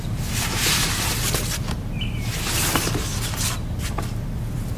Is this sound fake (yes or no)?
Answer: no